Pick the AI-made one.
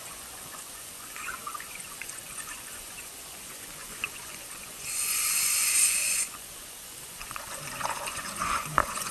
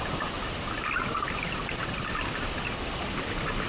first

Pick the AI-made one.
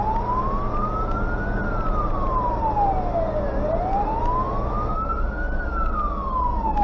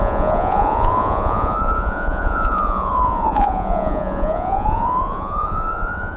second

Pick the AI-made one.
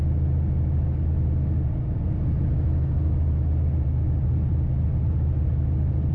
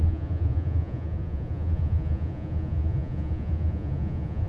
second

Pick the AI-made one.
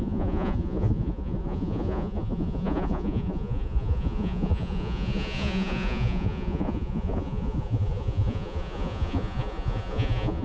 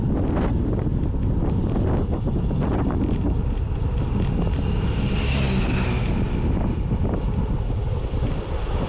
first